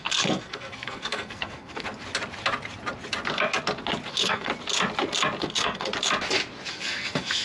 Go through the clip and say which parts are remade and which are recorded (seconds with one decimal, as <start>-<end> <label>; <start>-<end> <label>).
0.0-1.9 remade; 1.9-4.1 recorded; 4.1-4.5 remade; 4.5-5.4 recorded; 5.4-5.9 remade; 5.9-6.7 recorded; 6.7-7.4 remade

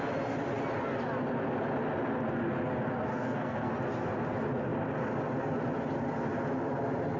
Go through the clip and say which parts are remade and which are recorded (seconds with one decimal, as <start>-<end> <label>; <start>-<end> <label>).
0.0-3.1 recorded; 3.1-3.7 remade; 3.7-7.2 recorded

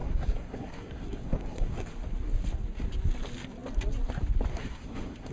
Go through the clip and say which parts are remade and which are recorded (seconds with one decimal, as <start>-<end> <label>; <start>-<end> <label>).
0.0-1.9 remade; 1.9-4.5 recorded; 4.5-5.3 remade

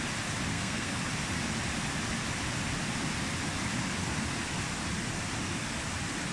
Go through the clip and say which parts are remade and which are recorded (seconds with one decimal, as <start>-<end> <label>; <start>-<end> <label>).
0.0-0.5 recorded; 0.5-1.0 remade; 1.0-6.3 recorded